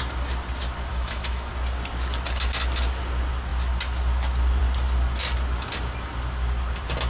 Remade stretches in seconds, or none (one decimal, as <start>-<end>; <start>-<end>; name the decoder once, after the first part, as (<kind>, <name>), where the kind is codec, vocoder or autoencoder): 0.9-1.5 (autoencoder, DAC-VAE)